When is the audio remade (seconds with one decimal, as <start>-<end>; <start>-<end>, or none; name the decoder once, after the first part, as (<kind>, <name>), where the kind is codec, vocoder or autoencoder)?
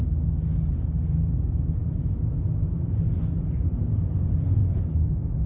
none